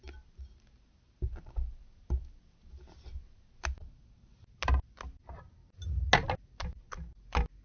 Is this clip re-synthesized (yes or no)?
no